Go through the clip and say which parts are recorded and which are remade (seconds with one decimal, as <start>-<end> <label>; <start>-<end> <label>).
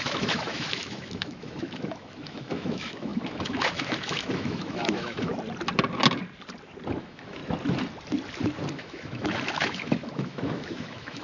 0.0-5.3 remade; 5.3-7.0 recorded; 7.0-7.4 remade; 7.4-8.7 recorded; 8.7-11.2 remade